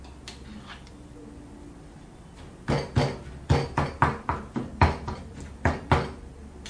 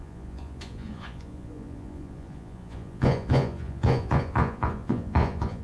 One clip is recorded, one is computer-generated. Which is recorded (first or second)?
first